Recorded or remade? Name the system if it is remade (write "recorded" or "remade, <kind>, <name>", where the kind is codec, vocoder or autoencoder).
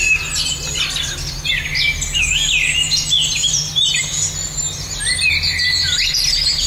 recorded